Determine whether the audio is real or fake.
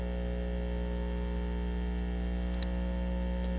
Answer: real